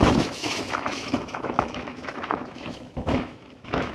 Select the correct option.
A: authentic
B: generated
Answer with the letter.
B